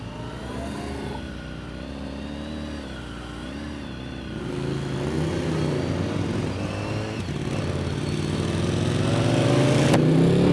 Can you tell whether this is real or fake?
real